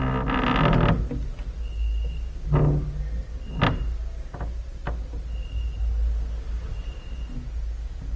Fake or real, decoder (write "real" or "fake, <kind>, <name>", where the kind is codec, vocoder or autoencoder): real